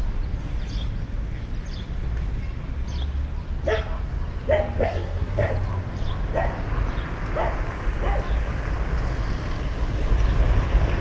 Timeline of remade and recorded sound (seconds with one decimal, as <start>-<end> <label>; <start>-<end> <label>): 0.0-4.8 recorded; 4.8-5.5 remade; 5.5-11.0 recorded